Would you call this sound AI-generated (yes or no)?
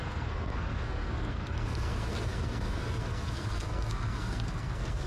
yes